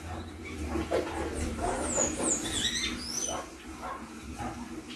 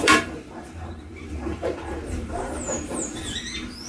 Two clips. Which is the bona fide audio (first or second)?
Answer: first